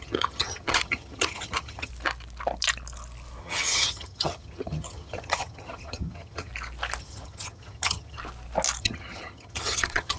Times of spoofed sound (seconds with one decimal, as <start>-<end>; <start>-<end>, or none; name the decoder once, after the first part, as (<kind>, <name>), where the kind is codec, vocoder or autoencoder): 0.0-1.9 (vocoder, HiFi-GAN); 3.4-6.5; 7.0-8.2; 8.8-10.2

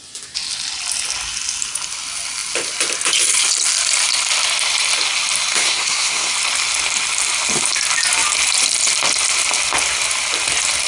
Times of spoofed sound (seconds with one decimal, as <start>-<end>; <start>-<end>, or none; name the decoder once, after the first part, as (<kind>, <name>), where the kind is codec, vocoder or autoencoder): 5.5-6.3 (codec, SNAC)

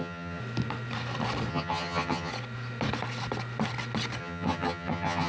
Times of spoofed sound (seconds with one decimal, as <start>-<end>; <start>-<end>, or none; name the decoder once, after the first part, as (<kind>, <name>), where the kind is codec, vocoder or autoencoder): 0.0-0.4 (vocoder, HiFi-GAN); 1.5-2.3; 4.2-5.3

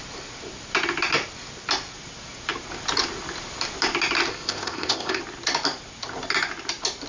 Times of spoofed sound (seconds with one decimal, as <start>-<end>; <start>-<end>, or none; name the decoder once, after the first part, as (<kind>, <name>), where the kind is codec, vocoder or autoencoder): 4.3-5.2 (codec, ZipCodec)